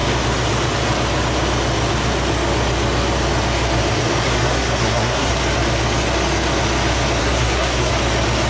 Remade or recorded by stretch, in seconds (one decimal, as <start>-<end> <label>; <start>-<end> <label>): 0.0-4.2 recorded; 4.2-5.3 remade; 5.3-7.2 recorded; 7.2-7.9 remade; 7.9-8.5 recorded